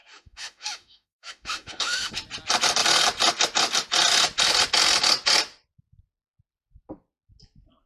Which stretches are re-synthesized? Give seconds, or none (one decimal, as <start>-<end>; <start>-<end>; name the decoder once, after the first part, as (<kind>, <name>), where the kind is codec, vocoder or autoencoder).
0.0-2.1 (autoencoder, DAC-VAE)